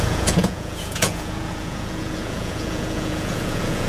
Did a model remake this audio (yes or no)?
yes